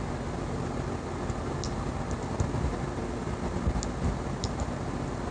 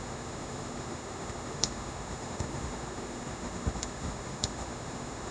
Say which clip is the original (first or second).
first